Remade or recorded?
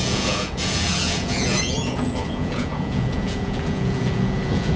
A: remade